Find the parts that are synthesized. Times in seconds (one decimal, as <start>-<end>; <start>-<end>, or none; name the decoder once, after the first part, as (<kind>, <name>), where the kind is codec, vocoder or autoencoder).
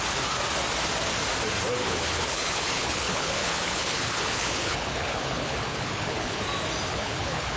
1.8-6.4 (codec, HILCodec); 6.9-7.6